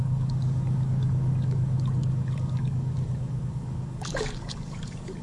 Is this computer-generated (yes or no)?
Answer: yes